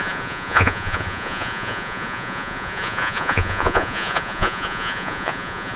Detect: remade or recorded remade